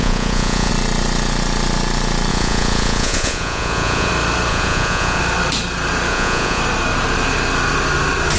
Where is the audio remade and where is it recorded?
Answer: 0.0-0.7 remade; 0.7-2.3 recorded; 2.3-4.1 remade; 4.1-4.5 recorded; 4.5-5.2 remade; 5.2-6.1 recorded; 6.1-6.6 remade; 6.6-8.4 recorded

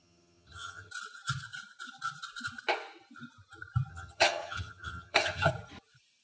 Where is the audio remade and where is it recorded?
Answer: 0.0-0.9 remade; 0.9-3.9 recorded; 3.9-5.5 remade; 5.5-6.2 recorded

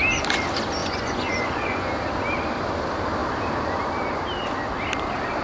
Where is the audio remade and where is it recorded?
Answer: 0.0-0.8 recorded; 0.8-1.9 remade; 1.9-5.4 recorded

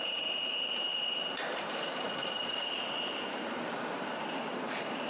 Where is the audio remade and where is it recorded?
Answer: 0.0-5.1 remade

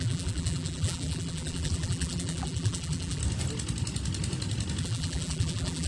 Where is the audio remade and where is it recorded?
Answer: 0.0-3.2 remade; 3.2-4.8 recorded; 4.8-5.9 remade

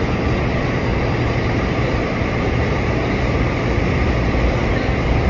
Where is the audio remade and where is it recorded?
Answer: 0.0-0.9 recorded; 0.9-4.0 remade; 4.0-5.3 recorded

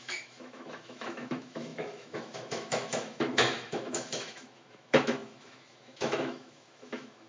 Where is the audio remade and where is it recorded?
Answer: 0.0-7.3 remade